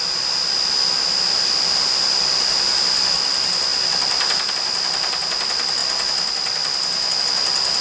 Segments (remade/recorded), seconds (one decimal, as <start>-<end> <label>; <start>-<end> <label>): 0.0-7.8 recorded

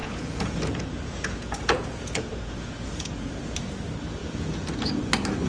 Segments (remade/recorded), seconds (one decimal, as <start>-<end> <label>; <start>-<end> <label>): 0.0-3.3 remade; 3.3-4.2 recorded; 4.2-5.1 remade; 5.1-5.5 recorded

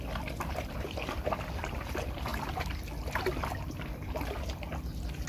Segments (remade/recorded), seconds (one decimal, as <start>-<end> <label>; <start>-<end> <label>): 0.0-5.3 recorded

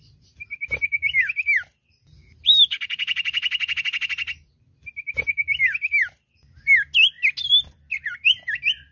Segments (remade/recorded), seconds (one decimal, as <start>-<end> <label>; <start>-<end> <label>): 0.0-8.9 recorded

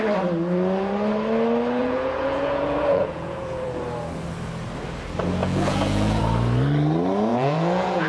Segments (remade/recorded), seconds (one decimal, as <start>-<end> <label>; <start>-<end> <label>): 0.0-1.8 recorded; 1.8-3.8 remade; 3.8-5.4 recorded; 5.4-6.2 remade; 6.2-7.3 recorded; 7.3-8.1 remade

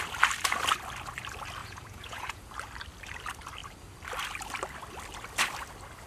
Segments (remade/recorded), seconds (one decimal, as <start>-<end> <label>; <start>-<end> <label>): 0.0-1.6 recorded; 1.6-2.5 remade; 2.5-6.1 recorded

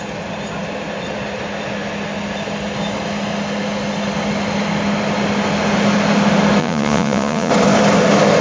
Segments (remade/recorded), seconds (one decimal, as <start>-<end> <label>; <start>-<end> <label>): 0.0-6.6 recorded; 6.6-7.5 remade; 7.5-8.4 recorded

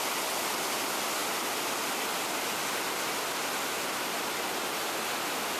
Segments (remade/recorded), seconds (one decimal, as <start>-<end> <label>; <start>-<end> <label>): 0.0-5.6 recorded